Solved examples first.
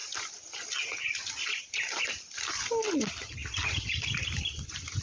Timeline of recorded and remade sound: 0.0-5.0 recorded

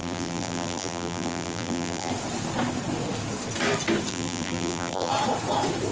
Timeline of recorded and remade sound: 0.0-2.1 remade; 2.1-4.1 recorded; 4.1-5.1 remade; 5.1-5.9 recorded

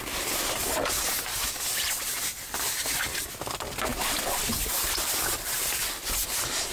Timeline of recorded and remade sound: 0.0-3.9 recorded; 3.9-5.8 remade; 5.8-6.7 recorded

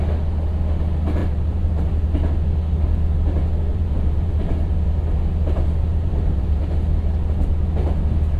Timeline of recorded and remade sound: 0.0-1.2 recorded; 1.2-1.9 remade; 1.9-3.7 recorded; 3.7-4.7 remade; 4.7-5.9 recorded; 5.9-6.6 remade; 6.6-8.4 recorded

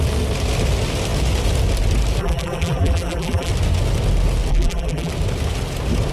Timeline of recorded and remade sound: 0.0-2.2 recorded; 2.2-3.5 remade; 3.5-4.5 recorded; 4.5-5.1 remade; 5.1-6.1 recorded

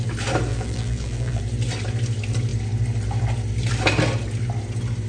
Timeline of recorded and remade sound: 0.0-0.5 recorded; 0.5-1.4 remade; 1.4-5.1 recorded